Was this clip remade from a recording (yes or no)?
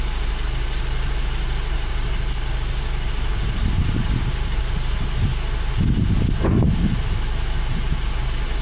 no